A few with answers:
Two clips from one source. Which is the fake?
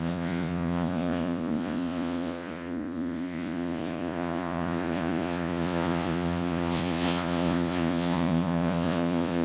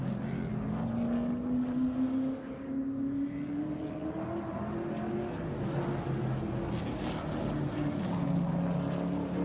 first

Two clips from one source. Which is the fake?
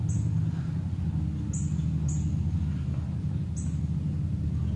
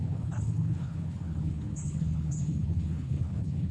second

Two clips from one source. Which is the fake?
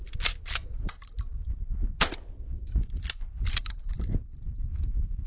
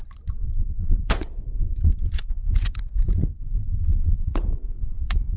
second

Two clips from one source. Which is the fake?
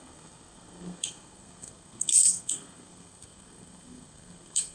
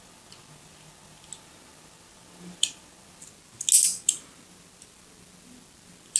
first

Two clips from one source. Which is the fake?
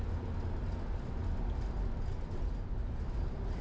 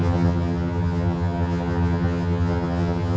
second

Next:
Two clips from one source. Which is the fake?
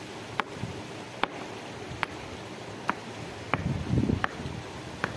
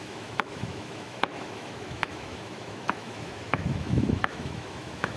second